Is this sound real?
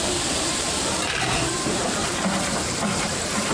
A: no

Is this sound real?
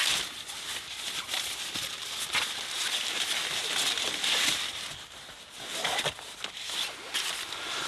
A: yes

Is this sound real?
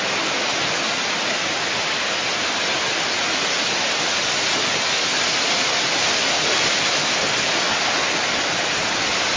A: yes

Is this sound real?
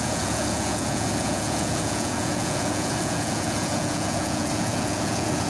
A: no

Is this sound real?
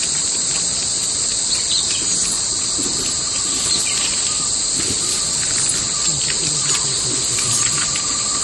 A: yes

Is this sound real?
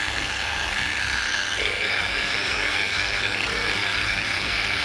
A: no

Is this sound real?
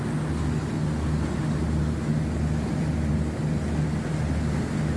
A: yes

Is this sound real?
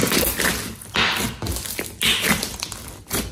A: yes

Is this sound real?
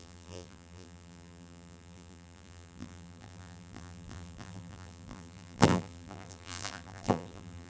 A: no